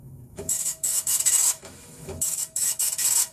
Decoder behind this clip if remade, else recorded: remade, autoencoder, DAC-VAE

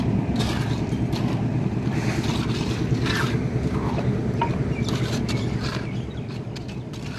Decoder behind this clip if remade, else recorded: recorded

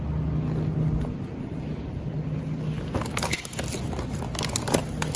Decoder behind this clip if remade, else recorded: recorded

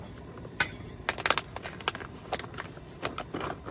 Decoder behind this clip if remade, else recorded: recorded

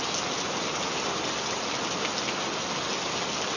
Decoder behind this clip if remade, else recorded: recorded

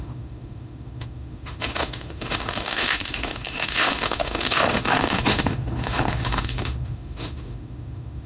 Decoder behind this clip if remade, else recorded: remade, autoencoder, DAC-VAE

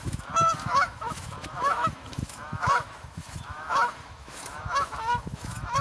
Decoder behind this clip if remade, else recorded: remade, autoencoder, DAC-VAE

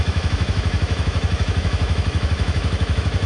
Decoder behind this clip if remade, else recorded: remade, autoencoder, DAC-VAE